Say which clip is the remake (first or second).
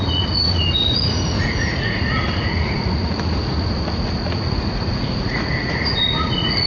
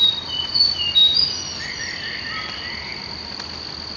first